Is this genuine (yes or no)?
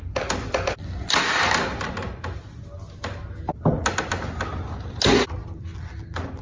yes